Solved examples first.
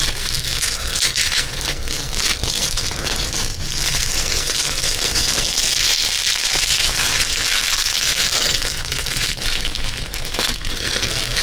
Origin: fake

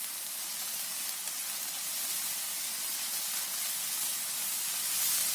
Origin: real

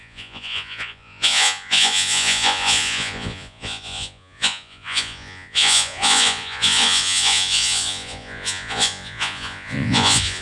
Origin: fake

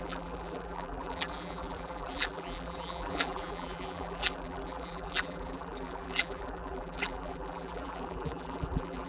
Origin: fake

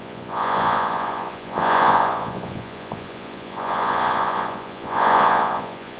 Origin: fake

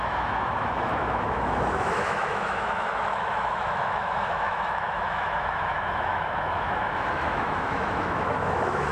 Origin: fake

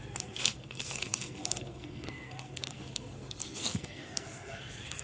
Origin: fake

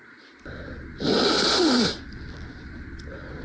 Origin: fake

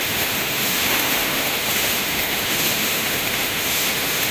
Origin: fake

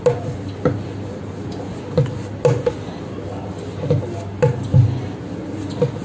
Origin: real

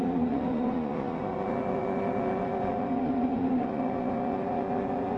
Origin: fake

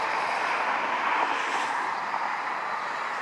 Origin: real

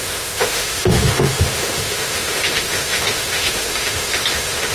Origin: fake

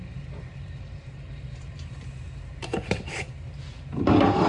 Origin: fake